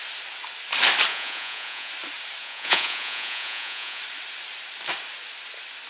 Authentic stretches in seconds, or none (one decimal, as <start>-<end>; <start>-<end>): 0.0-1.1; 1.9-2.4; 4.0-5.9